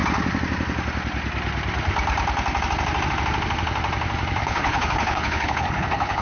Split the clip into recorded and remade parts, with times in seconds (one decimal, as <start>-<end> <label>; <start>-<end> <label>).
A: 0.0-4.4 recorded; 4.4-6.2 remade